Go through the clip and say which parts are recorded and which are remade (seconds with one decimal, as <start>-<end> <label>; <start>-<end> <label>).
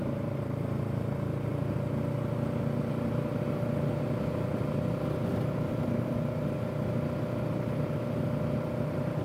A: 0.0-9.2 recorded